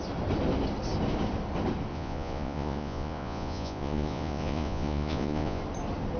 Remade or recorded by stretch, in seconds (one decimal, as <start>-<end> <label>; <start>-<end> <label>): 0.0-1.9 recorded; 1.9-5.6 remade; 5.6-6.2 recorded